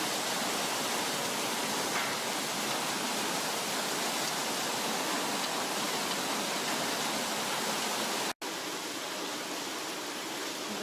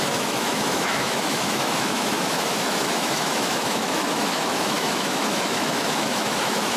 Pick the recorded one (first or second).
first